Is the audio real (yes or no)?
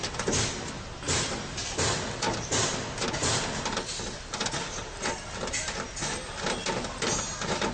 yes